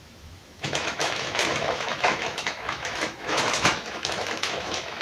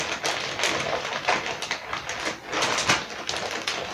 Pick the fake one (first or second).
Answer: first